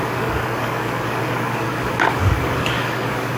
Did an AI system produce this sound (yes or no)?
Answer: yes